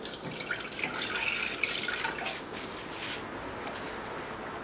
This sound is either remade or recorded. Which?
recorded